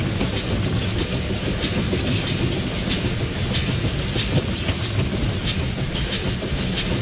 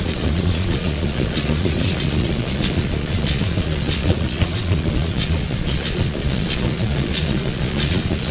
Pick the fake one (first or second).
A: second